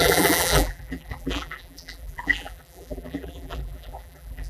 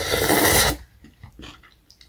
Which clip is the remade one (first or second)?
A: first